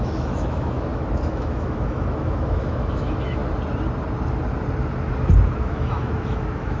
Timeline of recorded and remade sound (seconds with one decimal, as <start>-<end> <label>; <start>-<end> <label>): 0.0-3.4 remade; 3.4-5.6 recorded; 5.6-6.8 remade